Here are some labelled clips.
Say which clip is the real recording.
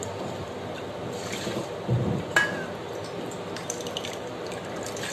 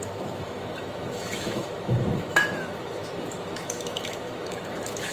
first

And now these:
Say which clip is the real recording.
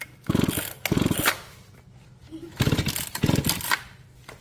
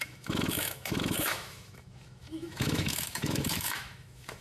first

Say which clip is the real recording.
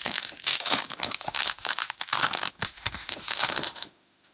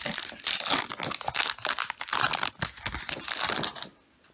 second